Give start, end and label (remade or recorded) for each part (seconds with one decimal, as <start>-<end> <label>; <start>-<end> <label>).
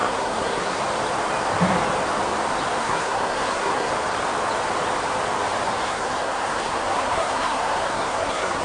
0.0-0.8 remade; 0.8-2.8 recorded; 2.8-3.9 remade; 3.9-5.7 recorded; 5.7-8.6 remade